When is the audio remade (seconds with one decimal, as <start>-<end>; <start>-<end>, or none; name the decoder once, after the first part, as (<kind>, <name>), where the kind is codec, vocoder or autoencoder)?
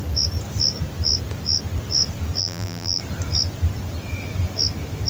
2.4-3.0 (vocoder, BigVGAN v2)